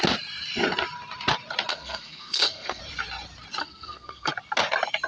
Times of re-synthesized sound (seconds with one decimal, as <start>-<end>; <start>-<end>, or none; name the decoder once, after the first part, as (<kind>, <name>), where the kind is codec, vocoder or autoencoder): 1.7-2.8 (codec, SNAC); 3.6-4.3